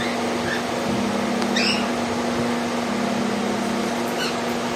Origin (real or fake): real